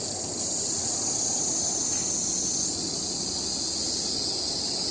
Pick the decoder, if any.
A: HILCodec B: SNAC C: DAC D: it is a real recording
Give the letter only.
D